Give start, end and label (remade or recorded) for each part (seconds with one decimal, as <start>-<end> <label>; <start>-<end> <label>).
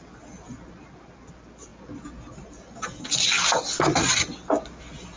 0.0-5.2 recorded